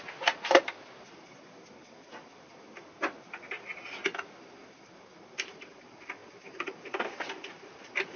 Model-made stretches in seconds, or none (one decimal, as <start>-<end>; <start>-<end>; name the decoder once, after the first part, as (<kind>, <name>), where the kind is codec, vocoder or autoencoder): none